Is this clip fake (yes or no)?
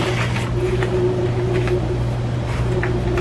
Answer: no